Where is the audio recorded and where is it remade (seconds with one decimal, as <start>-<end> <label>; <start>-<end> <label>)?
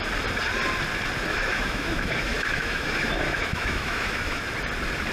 0.0-1.3 recorded; 1.3-4.4 remade; 4.4-5.1 recorded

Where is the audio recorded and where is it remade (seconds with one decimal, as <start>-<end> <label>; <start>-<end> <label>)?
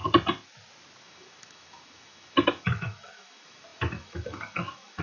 0.0-1.0 recorded; 1.0-5.0 remade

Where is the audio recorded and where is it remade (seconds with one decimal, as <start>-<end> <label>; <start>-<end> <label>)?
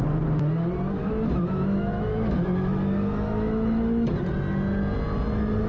0.0-1.0 recorded; 1.0-4.1 remade; 4.1-5.7 recorded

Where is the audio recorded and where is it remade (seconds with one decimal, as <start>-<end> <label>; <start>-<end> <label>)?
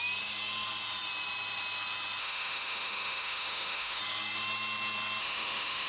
0.0-2.2 recorded; 2.2-4.0 remade; 4.0-5.2 recorded; 5.2-5.9 remade